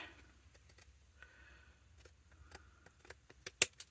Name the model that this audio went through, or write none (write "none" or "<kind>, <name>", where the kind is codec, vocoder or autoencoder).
none